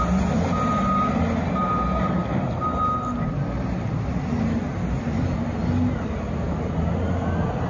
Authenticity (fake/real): real